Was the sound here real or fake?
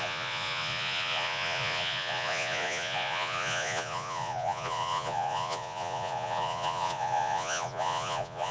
fake